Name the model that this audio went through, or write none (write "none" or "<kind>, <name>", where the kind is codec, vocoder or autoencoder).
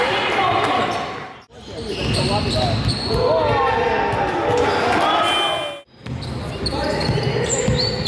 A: none